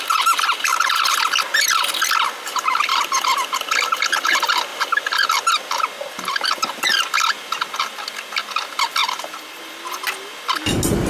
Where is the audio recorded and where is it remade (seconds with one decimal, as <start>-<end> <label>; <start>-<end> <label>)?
0.0-2.9 recorded; 2.9-3.7 remade; 3.7-4.7 recorded; 4.7-5.5 remade; 5.5-9.0 recorded; 9.0-9.6 remade; 9.6-11.1 recorded